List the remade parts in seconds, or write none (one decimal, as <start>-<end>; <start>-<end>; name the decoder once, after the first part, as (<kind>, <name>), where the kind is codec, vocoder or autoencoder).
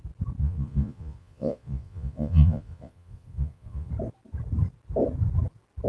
0.4-3.9 (vocoder, Vocos)